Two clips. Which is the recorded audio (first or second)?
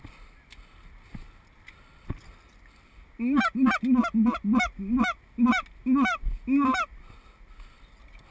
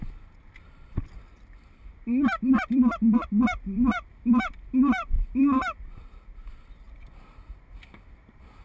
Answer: first